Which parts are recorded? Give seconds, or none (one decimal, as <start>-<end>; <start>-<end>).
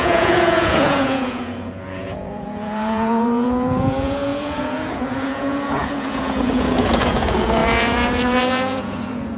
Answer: none